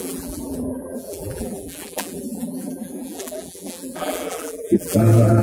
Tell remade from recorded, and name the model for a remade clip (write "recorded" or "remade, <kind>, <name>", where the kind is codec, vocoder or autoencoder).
remade, vocoder, BigVGAN v2